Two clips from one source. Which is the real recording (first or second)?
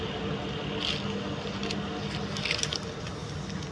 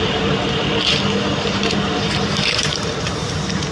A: first